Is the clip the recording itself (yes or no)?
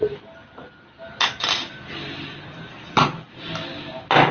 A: yes